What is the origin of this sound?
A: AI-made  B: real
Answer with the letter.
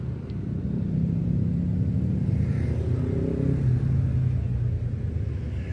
B